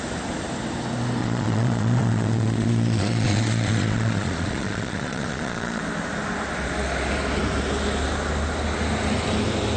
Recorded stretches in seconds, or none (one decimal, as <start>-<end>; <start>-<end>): 0.0-1.2; 5.8-9.8